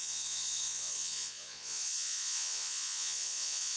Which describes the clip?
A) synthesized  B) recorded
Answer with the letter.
A